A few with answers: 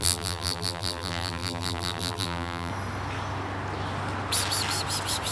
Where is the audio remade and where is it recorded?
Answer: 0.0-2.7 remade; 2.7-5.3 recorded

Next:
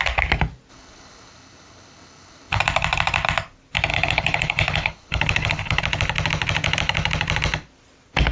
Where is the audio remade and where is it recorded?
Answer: 0.0-0.7 recorded; 0.7-2.6 remade; 2.6-3.9 recorded; 3.9-5.8 remade; 5.8-8.3 recorded

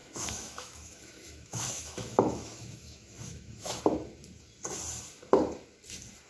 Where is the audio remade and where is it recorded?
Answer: 0.0-3.8 remade; 3.8-6.3 recorded

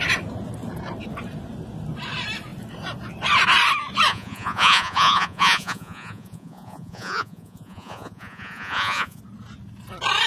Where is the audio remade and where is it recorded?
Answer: 0.0-4.1 recorded; 4.1-9.2 remade; 9.2-10.3 recorded

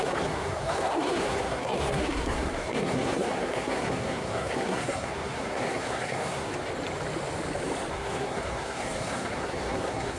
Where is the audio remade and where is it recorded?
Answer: 0.0-6.5 remade; 6.5-7.9 recorded; 7.9-10.2 remade

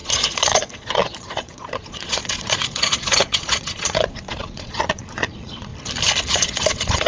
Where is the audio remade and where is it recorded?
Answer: 0.0-5.7 remade; 5.7-6.3 recorded; 6.3-7.1 remade

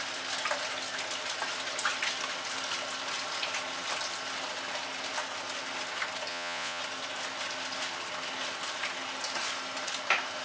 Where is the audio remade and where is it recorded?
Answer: 0.0-6.3 recorded; 6.3-6.8 remade; 6.8-10.4 recorded